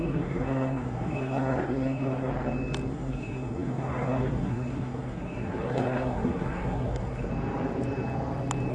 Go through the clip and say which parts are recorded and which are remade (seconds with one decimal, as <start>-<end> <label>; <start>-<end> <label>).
0.0-2.3 remade; 2.3-2.9 recorded; 2.9-7.3 remade; 7.3-8.7 recorded

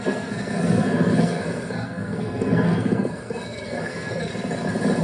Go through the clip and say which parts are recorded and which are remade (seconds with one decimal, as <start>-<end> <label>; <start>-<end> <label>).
0.0-4.3 remade; 4.3-5.0 recorded

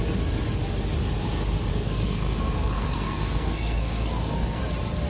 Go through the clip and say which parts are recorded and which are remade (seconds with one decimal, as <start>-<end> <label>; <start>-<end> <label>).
0.0-1.7 recorded; 1.7-4.6 remade; 4.6-5.1 recorded

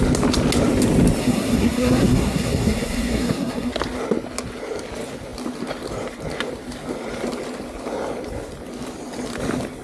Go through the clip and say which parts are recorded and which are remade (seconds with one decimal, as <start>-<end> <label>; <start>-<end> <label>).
0.0-1.2 recorded; 1.2-3.7 remade; 3.7-9.8 recorded

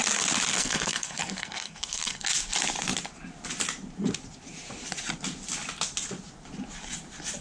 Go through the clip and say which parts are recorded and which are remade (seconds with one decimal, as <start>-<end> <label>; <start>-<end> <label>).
0.0-0.5 recorded; 0.5-2.2 remade; 2.2-7.4 recorded

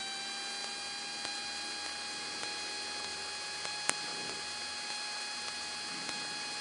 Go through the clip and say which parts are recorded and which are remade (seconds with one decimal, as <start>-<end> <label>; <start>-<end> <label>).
0.0-6.6 recorded

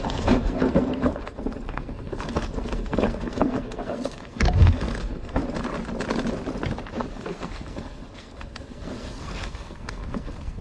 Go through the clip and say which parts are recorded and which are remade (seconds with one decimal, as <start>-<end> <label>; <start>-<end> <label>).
0.0-5.4 remade; 5.4-7.1 recorded; 7.1-10.6 remade

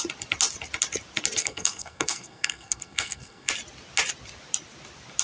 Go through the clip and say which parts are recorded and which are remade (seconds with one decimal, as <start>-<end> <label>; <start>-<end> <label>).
0.0-1.4 recorded; 1.4-3.5 remade; 3.5-5.2 recorded